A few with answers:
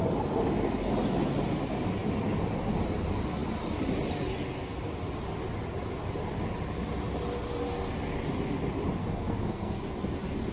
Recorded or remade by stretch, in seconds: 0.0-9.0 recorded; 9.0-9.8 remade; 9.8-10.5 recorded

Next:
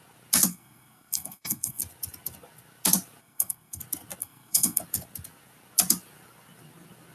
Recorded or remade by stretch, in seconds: 0.0-0.5 recorded; 0.5-1.8 remade; 1.8-3.2 recorded; 3.2-3.8 remade; 3.8-4.2 recorded; 4.2-4.8 remade; 4.8-7.1 recorded

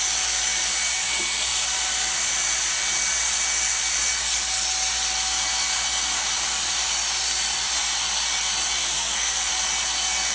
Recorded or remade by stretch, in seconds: 0.0-8.8 recorded; 8.8-9.5 remade; 9.5-10.3 recorded

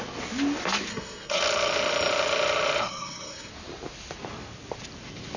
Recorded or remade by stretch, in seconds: 0.0-0.9 recorded; 0.9-1.4 remade; 1.4-2.8 recorded; 2.8-3.5 remade; 3.5-5.4 recorded